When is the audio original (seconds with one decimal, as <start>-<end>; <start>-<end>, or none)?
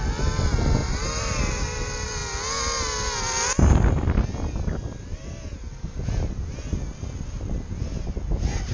0.0-0.8; 1.4-8.7